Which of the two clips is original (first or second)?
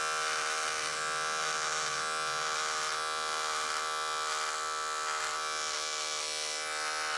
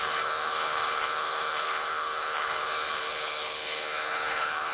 first